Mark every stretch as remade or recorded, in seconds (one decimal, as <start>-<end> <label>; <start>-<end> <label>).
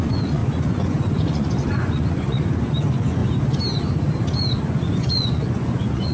0.0-3.2 remade; 3.2-4.6 recorded; 4.6-6.1 remade